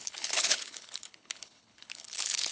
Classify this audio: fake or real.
fake